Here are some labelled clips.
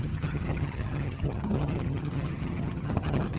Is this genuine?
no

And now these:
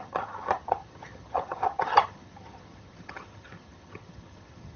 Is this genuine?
no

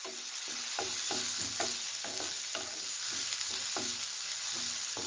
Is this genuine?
yes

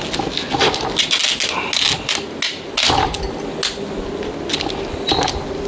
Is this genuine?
yes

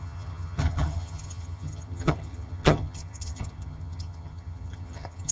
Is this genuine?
no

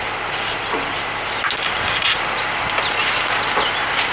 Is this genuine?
yes